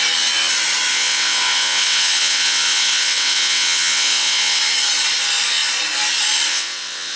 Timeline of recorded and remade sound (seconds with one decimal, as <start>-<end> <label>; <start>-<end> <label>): 0.0-0.9 recorded; 0.9-4.6 remade; 4.6-6.5 recorded; 6.5-7.2 remade